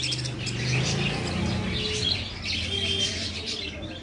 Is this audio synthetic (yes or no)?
no